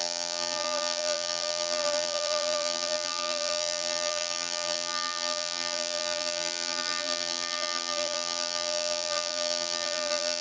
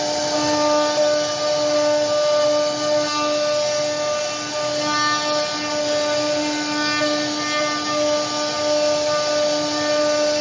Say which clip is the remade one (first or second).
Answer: first